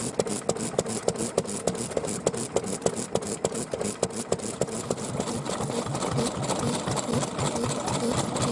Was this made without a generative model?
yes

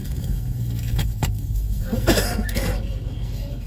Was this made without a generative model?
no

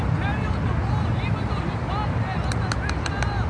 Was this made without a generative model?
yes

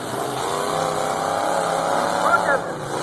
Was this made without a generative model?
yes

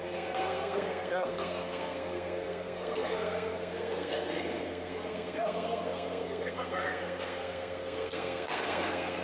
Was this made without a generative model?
no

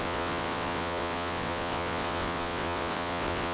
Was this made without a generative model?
no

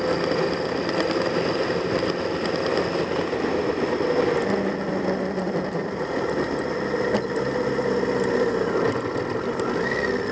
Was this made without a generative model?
yes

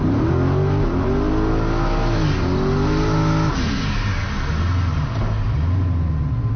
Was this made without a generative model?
yes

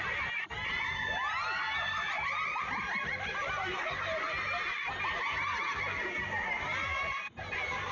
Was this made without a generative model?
yes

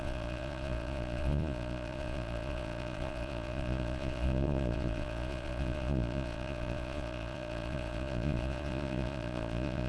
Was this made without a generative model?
no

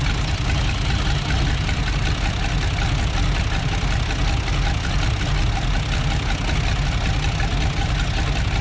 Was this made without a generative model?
yes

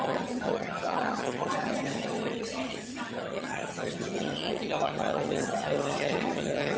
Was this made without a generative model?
no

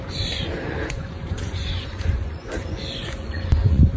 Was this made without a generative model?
no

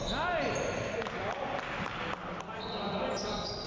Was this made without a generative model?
yes